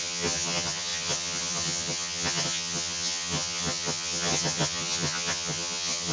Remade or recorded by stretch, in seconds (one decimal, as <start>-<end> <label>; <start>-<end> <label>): 0.0-6.1 remade